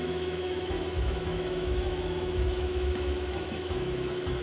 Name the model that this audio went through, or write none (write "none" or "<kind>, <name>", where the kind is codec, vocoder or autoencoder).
autoencoder, DAC-VAE